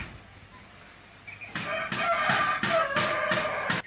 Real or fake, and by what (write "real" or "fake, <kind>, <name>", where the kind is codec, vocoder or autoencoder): real